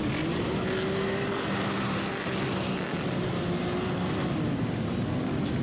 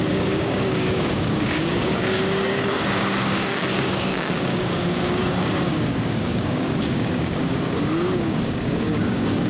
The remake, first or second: second